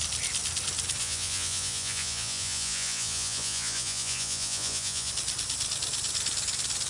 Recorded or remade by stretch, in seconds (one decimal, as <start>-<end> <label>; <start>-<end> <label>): 0.0-1.0 recorded; 1.0-5.1 remade; 5.1-6.9 recorded